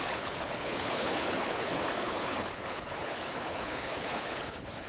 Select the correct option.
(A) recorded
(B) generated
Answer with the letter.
B